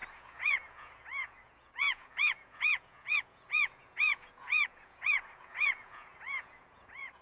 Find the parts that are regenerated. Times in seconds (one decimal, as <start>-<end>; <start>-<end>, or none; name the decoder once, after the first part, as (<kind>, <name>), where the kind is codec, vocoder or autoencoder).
0.0-7.2 (vocoder, Vocos)